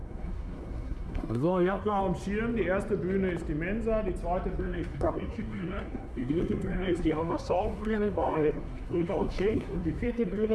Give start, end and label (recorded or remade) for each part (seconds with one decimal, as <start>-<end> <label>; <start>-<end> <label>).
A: 0.0-2.0 remade; 2.0-4.6 recorded; 4.6-10.5 remade